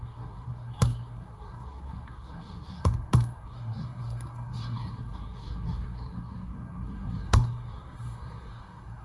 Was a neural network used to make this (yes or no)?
yes